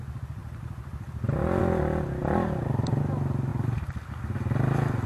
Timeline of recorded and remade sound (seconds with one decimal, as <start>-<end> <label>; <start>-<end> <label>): 0.0-0.4 recorded; 0.4-1.6 remade; 1.6-2.2 recorded; 2.2-3.0 remade; 3.0-3.5 recorded; 3.5-4.2 remade; 4.2-5.1 recorded